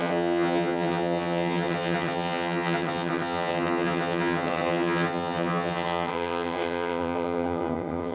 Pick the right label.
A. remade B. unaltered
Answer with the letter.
A